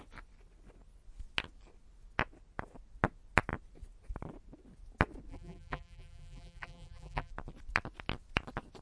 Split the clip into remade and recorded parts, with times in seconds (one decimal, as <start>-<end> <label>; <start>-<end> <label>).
0.0-5.3 recorded; 5.3-7.3 remade; 7.3-8.8 recorded